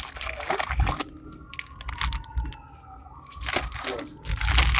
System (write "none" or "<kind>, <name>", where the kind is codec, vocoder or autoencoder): none